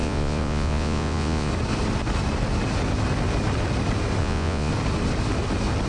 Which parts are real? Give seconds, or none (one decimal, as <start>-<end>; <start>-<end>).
1.5-4.2; 4.7-5.9